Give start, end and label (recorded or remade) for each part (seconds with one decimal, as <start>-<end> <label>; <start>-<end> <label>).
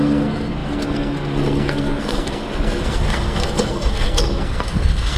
0.0-5.2 remade